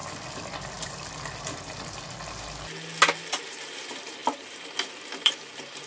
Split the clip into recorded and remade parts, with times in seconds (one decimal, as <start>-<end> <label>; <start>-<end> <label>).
0.0-3.5 recorded; 3.5-5.9 remade